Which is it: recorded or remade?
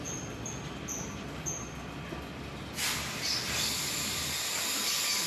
remade